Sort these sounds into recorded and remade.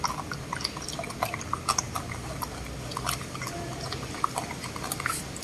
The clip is recorded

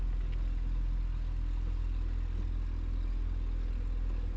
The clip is recorded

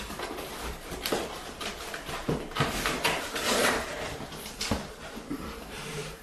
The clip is remade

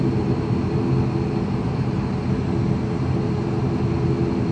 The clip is recorded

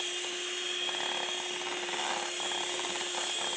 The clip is recorded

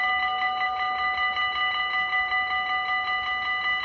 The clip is recorded